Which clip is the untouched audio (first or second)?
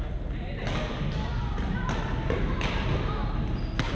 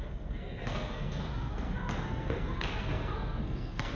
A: first